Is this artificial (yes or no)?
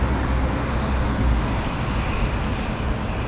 no